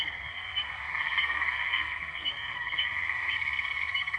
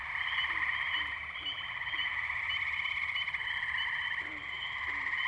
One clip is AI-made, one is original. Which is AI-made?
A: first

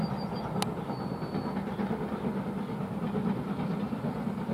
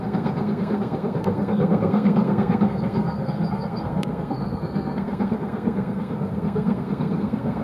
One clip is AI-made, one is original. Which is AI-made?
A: second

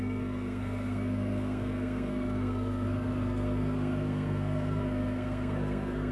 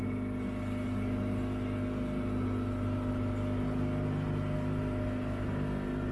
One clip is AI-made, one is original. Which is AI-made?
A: first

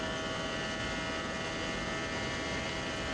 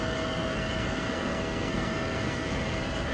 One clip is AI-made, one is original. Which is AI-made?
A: second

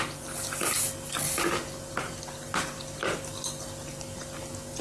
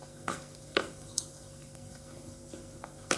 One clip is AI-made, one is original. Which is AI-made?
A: second